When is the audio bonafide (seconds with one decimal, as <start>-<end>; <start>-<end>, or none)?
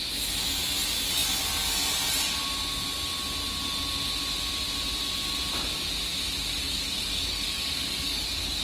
0.0-6.6